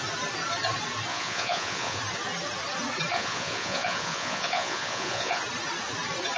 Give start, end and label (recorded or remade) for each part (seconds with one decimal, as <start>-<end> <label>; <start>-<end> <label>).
0.0-1.1 recorded; 1.1-2.0 remade; 2.0-3.1 recorded; 3.1-5.4 remade; 5.4-6.4 recorded